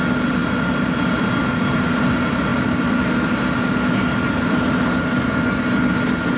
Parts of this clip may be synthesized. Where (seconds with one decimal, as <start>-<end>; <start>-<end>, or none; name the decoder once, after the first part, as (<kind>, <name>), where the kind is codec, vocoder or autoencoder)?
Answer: none